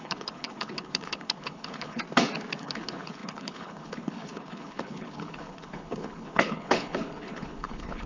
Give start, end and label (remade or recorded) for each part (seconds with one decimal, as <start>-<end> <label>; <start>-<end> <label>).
0.0-2.0 remade; 2.0-2.6 recorded; 2.6-8.1 remade